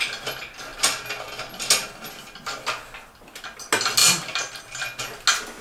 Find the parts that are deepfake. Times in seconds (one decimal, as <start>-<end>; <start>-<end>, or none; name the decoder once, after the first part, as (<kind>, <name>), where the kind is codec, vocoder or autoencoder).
none